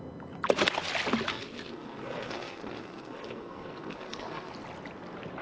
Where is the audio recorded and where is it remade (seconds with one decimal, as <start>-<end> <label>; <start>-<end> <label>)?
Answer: 0.0-1.3 recorded; 1.3-4.5 remade; 4.5-5.4 recorded